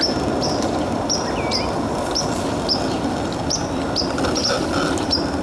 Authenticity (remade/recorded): recorded